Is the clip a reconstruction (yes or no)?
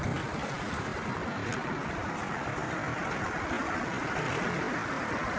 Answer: yes